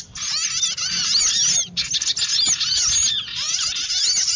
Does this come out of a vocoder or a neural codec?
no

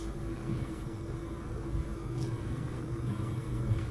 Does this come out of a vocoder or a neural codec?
yes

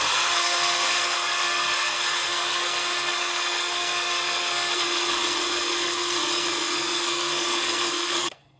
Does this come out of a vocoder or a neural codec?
yes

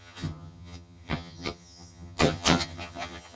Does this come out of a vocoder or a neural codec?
yes